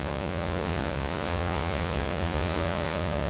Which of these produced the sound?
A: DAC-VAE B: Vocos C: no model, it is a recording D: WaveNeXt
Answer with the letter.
B